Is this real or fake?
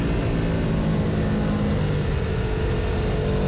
real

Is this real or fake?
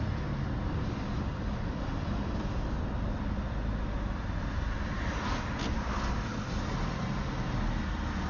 real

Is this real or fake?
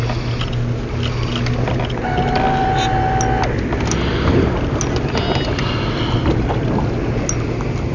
real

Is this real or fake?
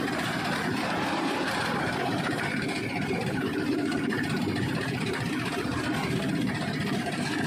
fake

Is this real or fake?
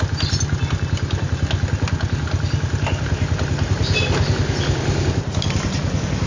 real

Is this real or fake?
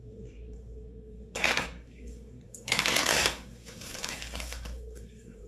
fake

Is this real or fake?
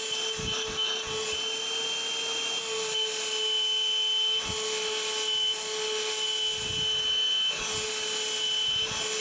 real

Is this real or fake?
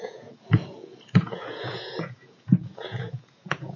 fake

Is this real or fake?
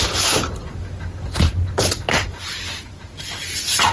real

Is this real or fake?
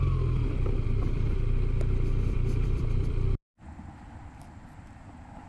fake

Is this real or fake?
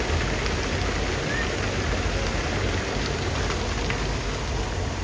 real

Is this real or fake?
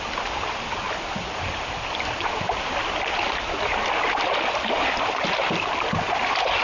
real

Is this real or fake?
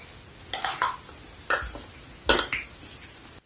real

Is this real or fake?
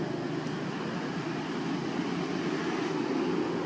real